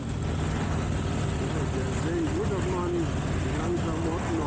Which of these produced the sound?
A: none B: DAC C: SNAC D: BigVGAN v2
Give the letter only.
A